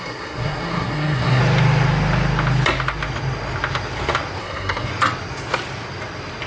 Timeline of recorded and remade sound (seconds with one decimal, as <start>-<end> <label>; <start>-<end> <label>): 0.0-1.4 remade; 1.4-4.4 recorded; 4.4-4.9 remade; 4.9-6.5 recorded